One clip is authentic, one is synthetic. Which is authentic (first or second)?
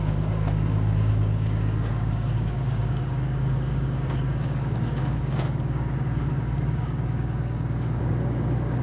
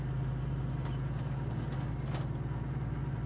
second